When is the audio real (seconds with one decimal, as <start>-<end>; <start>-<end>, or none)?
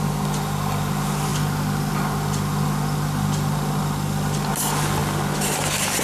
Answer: 0.0-6.0